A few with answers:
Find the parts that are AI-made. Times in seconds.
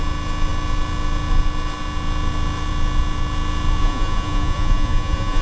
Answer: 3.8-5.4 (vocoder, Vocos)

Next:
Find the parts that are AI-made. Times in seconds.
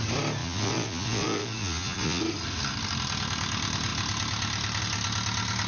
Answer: 0.4-2.2 (vocoder, Vocos)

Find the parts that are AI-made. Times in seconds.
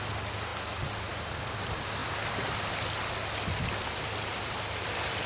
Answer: none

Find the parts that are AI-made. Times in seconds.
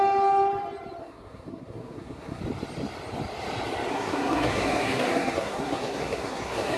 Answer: 1.0-2.4 (codec, SNAC); 3.9-6.8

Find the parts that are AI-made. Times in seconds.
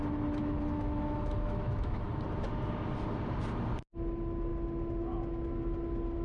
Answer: 0.4-2.1 (autoencoder, DAC-VAE)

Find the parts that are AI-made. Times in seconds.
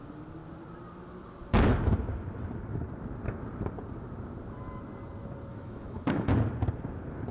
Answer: 5.5-6.3 (autoencoder, DAC-VAE)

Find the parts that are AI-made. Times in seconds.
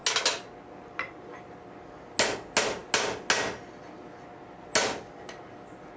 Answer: none